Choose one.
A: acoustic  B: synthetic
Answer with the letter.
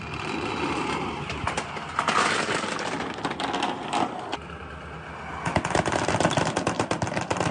A